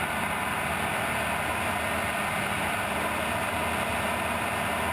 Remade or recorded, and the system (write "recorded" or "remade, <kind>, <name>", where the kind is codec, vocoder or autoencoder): recorded